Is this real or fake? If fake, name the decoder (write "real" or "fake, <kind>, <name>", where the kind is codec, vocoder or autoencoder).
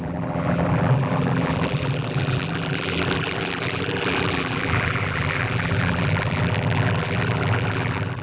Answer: fake, vocoder, BigVGAN v2